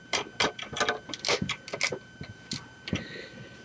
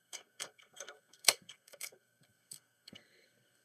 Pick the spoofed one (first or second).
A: second